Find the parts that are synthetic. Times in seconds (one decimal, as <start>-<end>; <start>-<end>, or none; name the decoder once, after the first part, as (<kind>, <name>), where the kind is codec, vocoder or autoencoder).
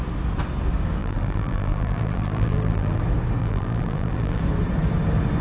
1.0-3.0 (vocoder, BigVGAN v2); 3.4-4.4